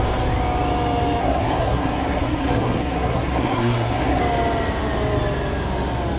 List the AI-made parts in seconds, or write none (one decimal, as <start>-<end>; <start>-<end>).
1.2-4.2